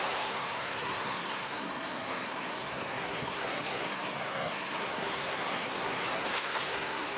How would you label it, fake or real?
fake